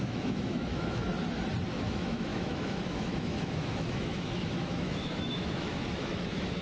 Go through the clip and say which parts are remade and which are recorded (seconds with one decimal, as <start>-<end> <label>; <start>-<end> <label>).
0.0-1.1 remade; 1.1-1.7 recorded; 1.7-6.6 remade